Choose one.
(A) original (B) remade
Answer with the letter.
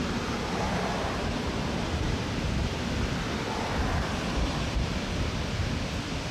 A